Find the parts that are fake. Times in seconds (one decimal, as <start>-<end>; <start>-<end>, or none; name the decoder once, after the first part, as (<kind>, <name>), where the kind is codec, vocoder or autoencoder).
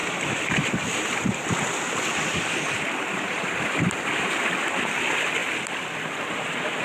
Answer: 3.3-4.3 (vocoder, BigVGAN v2)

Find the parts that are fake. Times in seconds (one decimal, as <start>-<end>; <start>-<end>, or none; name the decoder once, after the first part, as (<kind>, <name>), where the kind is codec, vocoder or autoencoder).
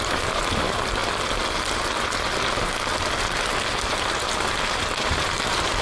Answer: 0.0-1.0 (vocoder, BigVGAN v2); 3.9-5.8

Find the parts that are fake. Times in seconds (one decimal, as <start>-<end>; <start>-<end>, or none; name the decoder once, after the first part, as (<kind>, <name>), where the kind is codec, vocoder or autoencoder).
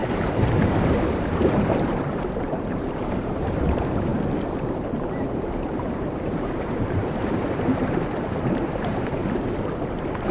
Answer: 0.0-4.1 (vocoder, BigVGAN v2); 5.2-9.2; 9.9-10.3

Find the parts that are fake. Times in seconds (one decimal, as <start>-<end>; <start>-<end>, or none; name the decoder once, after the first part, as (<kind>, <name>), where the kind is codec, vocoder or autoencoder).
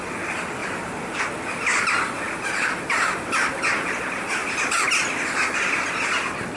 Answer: 0.6-1.2 (vocoder, BigVGAN v2); 1.7-4.0; 4.4-5.1